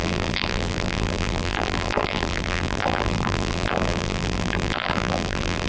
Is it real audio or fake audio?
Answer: fake